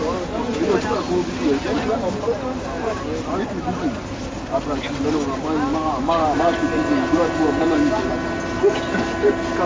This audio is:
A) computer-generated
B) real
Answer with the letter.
B